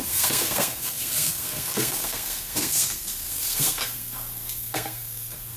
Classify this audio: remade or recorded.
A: remade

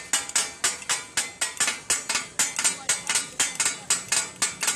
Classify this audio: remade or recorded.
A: recorded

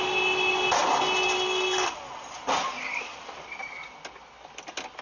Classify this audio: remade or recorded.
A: recorded